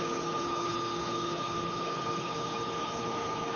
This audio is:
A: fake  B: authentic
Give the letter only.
A